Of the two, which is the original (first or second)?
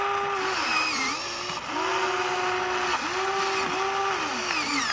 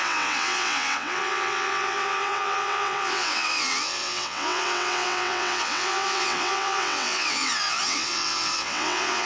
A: first